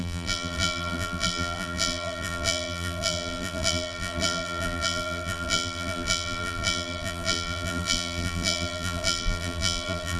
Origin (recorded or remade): remade